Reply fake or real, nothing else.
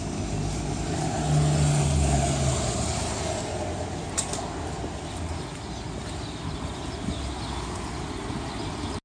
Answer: real